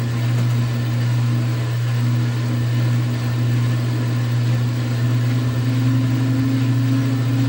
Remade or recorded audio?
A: recorded